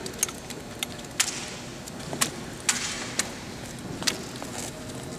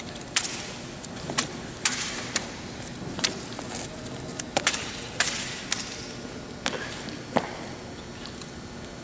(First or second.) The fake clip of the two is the second